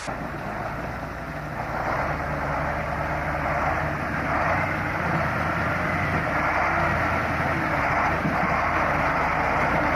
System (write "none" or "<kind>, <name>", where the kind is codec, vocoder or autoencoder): none